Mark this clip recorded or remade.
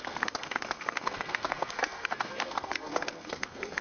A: remade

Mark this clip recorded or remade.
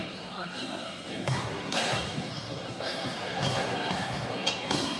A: remade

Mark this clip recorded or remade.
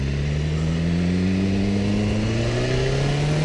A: recorded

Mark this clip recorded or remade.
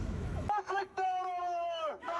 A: remade